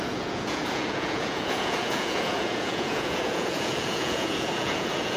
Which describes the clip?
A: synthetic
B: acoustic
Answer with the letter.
A